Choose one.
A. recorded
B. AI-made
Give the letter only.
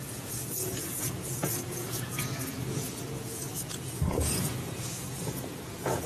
B